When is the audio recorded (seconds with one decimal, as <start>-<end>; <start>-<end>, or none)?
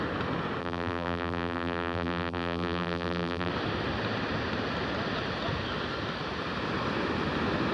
0.0-0.6; 3.5-7.7